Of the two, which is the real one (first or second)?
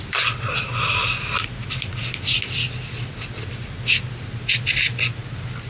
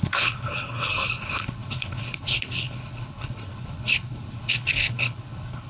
first